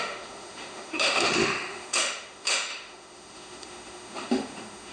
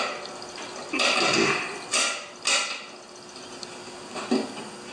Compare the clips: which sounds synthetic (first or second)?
first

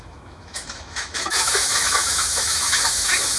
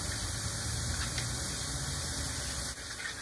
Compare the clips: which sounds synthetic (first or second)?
first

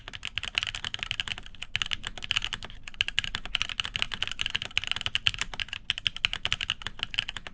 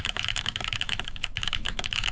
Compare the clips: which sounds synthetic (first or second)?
second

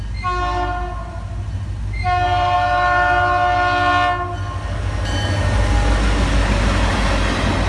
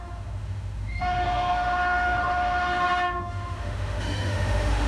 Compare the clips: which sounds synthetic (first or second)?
second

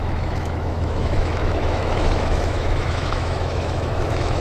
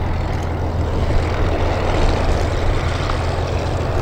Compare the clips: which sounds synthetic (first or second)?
first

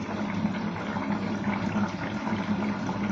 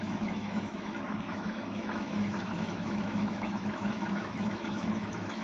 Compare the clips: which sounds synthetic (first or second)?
second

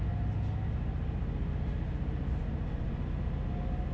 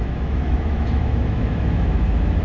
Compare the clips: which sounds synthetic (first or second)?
second